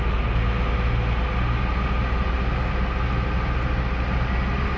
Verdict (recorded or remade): recorded